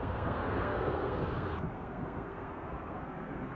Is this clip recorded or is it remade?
remade